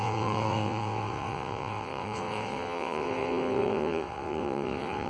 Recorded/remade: remade